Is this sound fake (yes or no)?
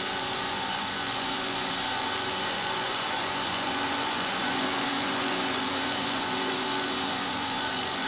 yes